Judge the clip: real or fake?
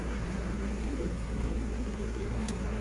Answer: fake